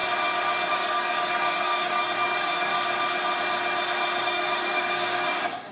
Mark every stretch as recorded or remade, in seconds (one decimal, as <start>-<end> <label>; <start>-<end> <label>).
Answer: 0.0-0.7 recorded; 0.7-2.7 remade; 2.7-4.2 recorded; 4.2-5.7 remade